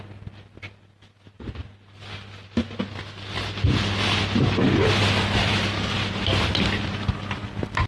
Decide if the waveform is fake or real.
real